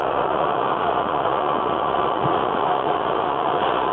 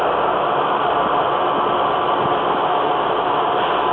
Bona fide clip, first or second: second